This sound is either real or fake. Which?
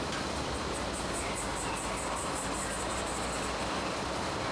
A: real